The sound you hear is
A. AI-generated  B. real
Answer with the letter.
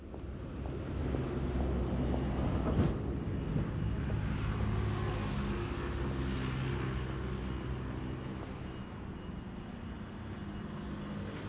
B